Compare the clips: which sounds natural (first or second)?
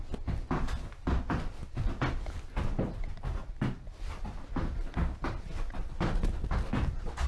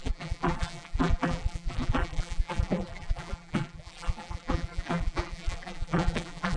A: first